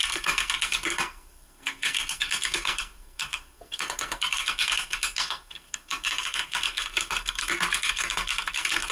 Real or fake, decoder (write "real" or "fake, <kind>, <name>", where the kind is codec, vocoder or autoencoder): fake, codec, SNAC